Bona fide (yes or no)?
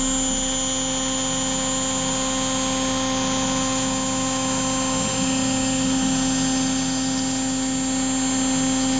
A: yes